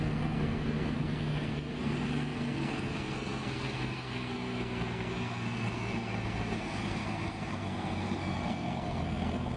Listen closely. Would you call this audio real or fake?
fake